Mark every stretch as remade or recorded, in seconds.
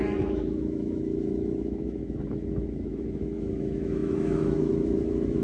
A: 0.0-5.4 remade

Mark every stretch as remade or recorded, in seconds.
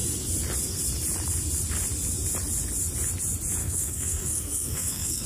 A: 0.0-3.6 recorded; 3.6-5.3 remade